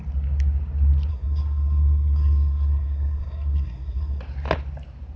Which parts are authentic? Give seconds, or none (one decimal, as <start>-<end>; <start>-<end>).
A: 0.0-1.1; 4.2-5.2